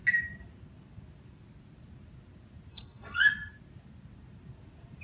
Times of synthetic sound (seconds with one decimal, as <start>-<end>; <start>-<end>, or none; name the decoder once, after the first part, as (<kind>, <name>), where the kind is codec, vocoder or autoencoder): 2.7-3.5 (codec, SNAC)